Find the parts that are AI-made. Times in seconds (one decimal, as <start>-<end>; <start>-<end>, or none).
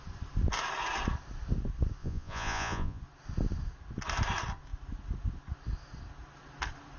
2.0-3.0